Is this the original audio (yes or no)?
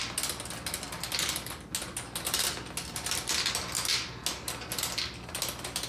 yes